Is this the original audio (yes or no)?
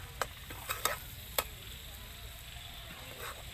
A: yes